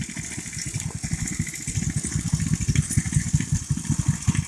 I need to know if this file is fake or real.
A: real